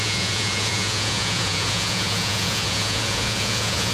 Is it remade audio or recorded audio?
remade